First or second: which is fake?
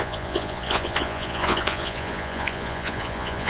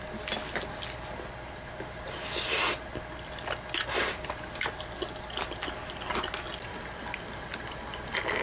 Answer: first